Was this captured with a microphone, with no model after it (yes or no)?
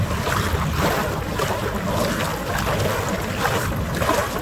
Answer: yes